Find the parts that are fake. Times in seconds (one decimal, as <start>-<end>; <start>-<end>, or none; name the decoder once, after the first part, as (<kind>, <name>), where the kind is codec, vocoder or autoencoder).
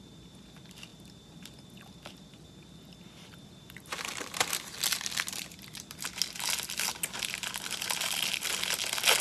none